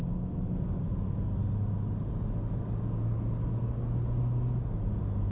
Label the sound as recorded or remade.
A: recorded